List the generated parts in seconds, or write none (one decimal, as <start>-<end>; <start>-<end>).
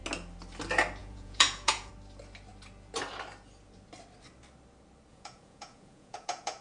1.0-1.9; 5.1-6.6